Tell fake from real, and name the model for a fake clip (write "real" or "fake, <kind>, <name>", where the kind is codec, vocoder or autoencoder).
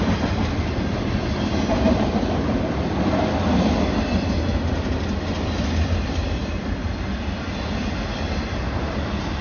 real